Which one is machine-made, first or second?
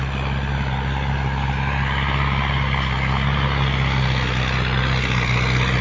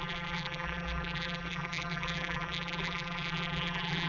second